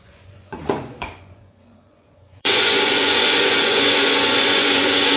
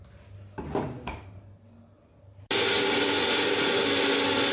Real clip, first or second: second